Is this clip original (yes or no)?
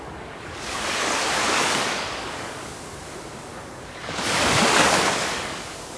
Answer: no